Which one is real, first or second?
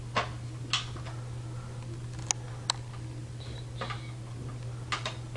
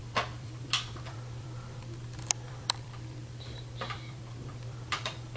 first